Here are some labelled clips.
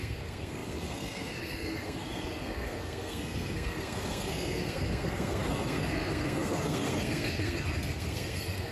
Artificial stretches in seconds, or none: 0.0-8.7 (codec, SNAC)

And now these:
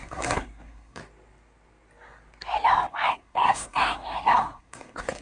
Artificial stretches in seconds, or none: 0.0-1.0 (codec, SNAC); 2.9-5.2